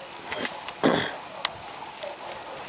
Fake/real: real